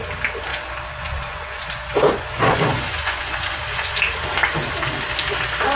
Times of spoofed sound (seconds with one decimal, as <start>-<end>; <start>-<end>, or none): 0.5-4.0